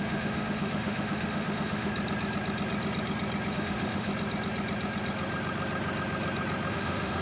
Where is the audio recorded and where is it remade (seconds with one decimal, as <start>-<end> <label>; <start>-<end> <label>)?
0.0-1.9 remade; 1.9-3.5 recorded; 3.5-4.1 remade; 4.1-6.7 recorded; 6.7-7.2 remade